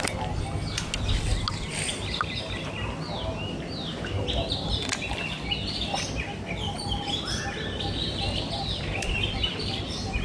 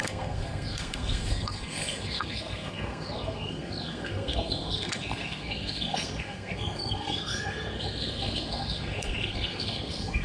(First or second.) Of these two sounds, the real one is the first